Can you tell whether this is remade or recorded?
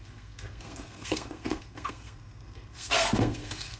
remade